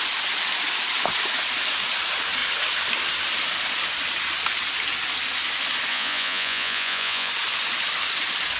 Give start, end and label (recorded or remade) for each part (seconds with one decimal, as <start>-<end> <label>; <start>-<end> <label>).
0.0-5.9 recorded; 5.9-7.3 remade; 7.3-8.6 recorded